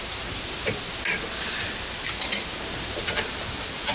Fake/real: real